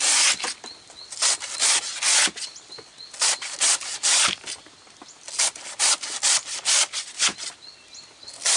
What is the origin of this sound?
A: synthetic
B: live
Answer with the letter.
B